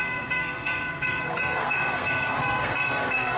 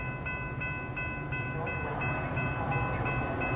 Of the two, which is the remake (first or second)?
first